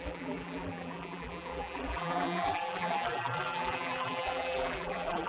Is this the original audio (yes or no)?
no